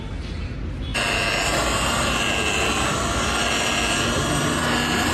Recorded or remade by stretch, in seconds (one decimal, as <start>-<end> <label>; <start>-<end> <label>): 0.0-5.1 recorded